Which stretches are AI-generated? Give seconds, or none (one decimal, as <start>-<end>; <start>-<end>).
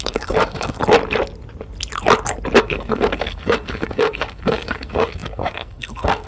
0.0-0.8; 2.6-6.3